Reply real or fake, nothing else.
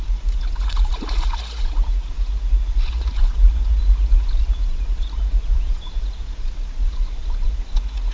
fake